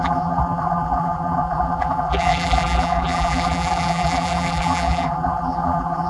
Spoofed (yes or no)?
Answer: yes